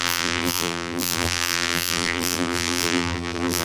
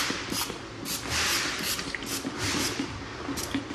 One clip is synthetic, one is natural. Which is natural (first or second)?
second